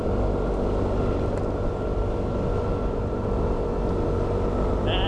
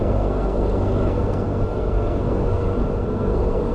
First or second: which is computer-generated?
second